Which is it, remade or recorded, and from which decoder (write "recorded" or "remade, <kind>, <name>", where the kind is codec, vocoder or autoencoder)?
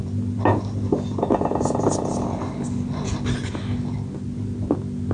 recorded